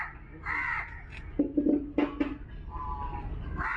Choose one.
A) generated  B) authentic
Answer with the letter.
B